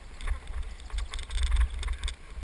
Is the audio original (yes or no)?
yes